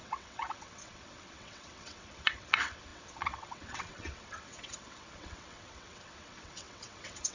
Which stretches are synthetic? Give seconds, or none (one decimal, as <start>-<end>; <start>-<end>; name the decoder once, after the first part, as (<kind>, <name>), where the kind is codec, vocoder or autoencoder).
0.0-7.3 (vocoder, WaveNeXt)